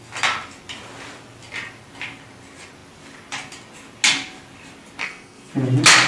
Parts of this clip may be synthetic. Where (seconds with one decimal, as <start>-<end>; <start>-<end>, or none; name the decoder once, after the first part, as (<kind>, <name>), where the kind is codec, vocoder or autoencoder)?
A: 5.0-5.5 (codec, SNAC)